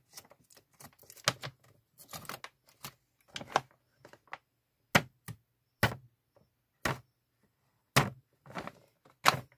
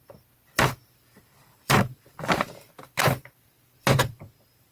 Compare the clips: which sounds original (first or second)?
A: first